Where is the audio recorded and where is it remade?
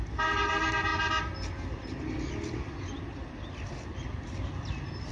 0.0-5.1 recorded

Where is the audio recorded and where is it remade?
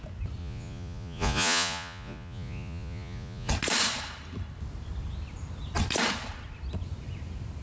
0.0-0.4 recorded; 0.4-3.5 remade; 3.5-7.6 recorded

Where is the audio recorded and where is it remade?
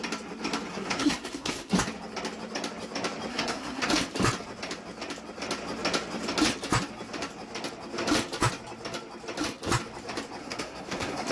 0.0-0.7 recorded; 0.7-1.7 remade; 1.7-3.3 recorded; 3.3-3.9 remade; 3.9-10.4 recorded; 10.4-11.3 remade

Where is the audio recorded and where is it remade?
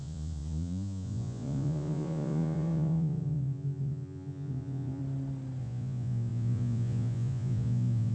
0.0-5.0 remade; 5.0-5.6 recorded; 5.6-8.1 remade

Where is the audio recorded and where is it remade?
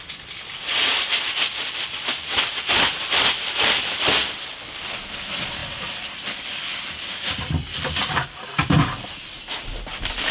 0.0-10.3 recorded